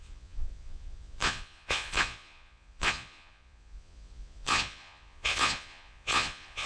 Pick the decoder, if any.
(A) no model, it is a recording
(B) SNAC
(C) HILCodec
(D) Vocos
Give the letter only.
D